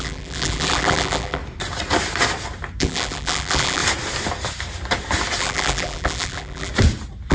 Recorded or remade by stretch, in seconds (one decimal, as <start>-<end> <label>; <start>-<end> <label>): 0.0-1.4 remade; 1.4-2.8 recorded; 2.8-3.8 remade; 3.8-5.4 recorded; 5.4-6.7 remade; 6.7-7.3 recorded